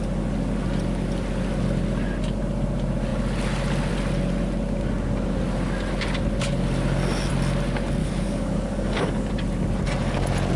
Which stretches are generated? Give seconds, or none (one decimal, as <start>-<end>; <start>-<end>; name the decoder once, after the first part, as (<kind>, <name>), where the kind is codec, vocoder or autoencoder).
8.0-9.3 (codec, DAC)